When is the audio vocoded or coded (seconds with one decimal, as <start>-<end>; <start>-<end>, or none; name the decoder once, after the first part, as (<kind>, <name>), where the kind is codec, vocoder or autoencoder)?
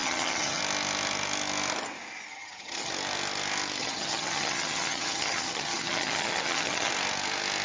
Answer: 0.0-0.6 (vocoder, HiFi-GAN); 2.3-2.9; 3.8-6.9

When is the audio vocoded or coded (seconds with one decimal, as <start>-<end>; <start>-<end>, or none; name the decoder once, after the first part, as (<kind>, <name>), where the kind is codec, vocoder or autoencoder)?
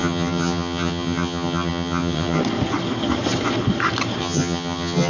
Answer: 0.0-2.4 (vocoder, HiFi-GAN); 4.2-5.1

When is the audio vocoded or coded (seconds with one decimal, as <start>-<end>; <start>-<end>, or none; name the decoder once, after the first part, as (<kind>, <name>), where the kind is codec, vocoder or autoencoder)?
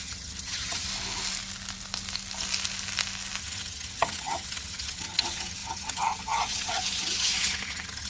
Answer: 0.0-0.9 (vocoder, HiFi-GAN); 3.4-8.1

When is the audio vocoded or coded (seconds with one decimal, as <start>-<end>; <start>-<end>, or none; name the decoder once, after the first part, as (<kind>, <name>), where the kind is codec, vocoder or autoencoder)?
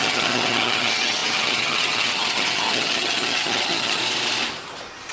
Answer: 0.0-4.0 (vocoder, HiFi-GAN)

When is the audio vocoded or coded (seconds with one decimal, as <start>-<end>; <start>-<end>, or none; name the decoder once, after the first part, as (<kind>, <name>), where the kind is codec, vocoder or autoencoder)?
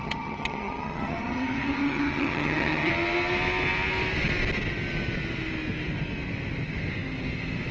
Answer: 0.0-2.9 (vocoder, HiFi-GAN)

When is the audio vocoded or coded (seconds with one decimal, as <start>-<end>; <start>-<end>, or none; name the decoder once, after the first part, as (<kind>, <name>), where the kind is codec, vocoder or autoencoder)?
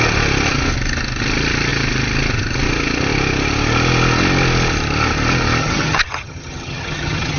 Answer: 5.6-7.4 (vocoder, HiFi-GAN)